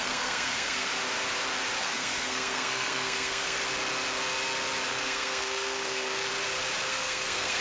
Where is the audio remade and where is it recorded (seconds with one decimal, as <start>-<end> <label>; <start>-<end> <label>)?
0.0-0.9 remade; 0.9-1.8 recorded; 1.8-3.6 remade; 3.6-4.9 recorded; 4.9-6.3 remade; 6.3-6.9 recorded; 6.9-7.6 remade